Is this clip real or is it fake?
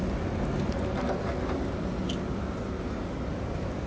real